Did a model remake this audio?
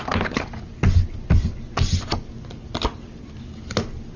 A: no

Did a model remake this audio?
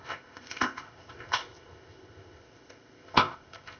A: yes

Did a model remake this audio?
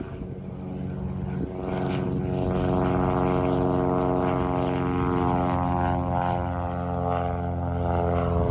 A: no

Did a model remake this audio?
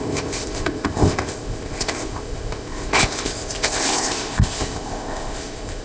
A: yes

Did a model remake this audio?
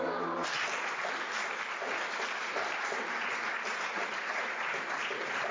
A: no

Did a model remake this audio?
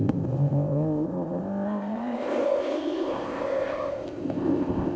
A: yes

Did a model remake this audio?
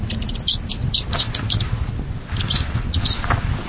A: no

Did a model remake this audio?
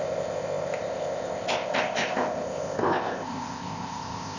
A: yes